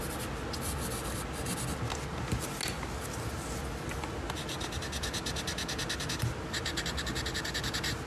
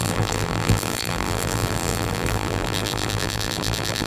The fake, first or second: second